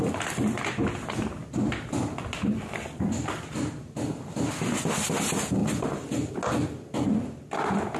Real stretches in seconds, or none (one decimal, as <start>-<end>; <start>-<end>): 0.0-8.0